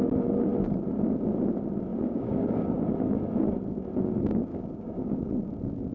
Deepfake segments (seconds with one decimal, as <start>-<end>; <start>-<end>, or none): 1.9-2.9; 4.5-5.3